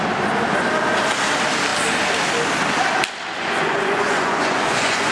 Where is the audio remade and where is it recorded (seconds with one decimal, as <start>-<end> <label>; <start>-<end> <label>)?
0.0-3.3 recorded; 3.3-5.1 remade